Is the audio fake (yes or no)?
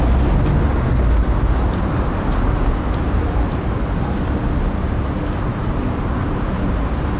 no